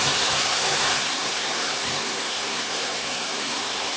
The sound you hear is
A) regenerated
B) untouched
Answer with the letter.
A